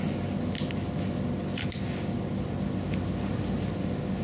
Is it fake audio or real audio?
real